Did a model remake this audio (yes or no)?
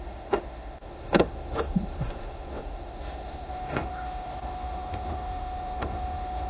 yes